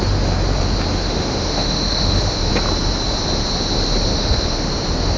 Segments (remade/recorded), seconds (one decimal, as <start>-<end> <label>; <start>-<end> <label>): 0.0-0.9 recorded; 0.9-2.5 remade; 2.5-4.1 recorded; 4.1-4.7 remade; 4.7-5.2 recorded

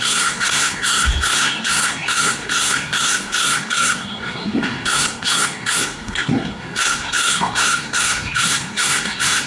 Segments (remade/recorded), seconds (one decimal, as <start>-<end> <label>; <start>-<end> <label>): 0.0-9.5 remade